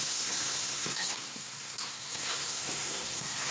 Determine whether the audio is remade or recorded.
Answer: remade